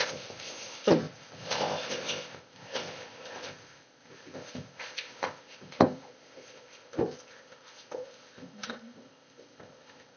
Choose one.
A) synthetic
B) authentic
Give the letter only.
A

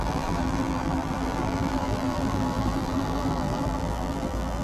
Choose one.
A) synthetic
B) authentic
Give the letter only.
A